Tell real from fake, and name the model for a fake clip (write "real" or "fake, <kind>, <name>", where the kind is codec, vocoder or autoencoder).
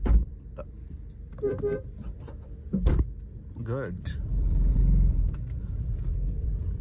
fake, vocoder, BigVGAN v2